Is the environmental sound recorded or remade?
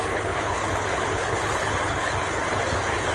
remade